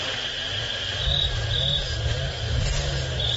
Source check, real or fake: real